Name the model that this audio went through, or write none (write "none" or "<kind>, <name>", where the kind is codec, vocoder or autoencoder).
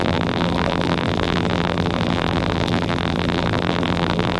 vocoder, BigVGAN v2